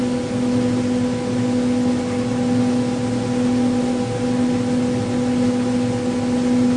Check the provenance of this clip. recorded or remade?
recorded